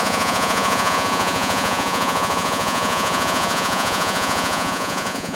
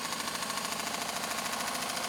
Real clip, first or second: second